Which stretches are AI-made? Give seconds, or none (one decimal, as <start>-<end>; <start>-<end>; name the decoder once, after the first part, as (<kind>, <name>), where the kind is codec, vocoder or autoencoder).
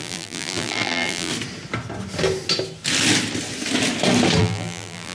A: 0.0-1.3 (vocoder, BigVGAN v2); 4.4-5.1